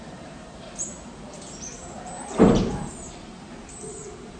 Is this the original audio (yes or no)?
no